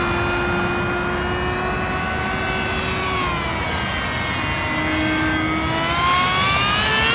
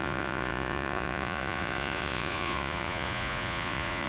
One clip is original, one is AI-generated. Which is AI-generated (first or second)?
second